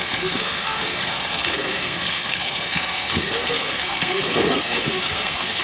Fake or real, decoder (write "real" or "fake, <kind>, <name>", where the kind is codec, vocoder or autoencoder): fake, codec, SNAC